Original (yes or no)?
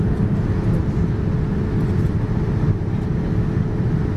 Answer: yes